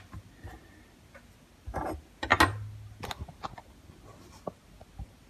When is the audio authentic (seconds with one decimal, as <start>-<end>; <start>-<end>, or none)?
0.0-5.3